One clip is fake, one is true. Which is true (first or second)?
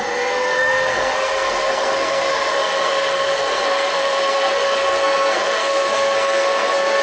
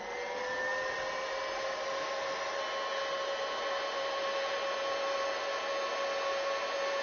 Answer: second